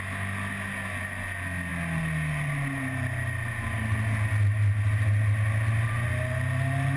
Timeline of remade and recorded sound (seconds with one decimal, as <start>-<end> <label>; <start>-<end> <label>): 0.0-7.0 recorded